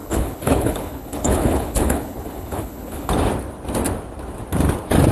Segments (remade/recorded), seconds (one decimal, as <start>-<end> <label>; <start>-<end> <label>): 0.0-3.1 remade; 3.1-5.1 recorded